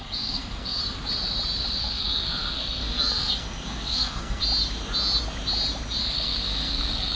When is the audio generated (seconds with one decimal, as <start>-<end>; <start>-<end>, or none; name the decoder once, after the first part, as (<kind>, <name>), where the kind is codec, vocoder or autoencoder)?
0.0-0.8 (codec, SNAC); 1.8-4.4; 6.0-7.2